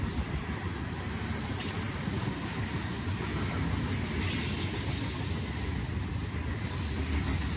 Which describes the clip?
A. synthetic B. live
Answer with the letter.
B